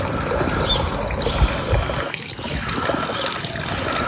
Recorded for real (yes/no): yes